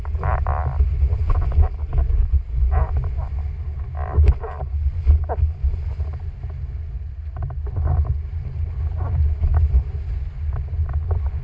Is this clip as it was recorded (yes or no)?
yes